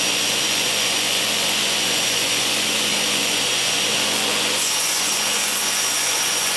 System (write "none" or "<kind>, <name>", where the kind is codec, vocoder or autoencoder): vocoder, Vocos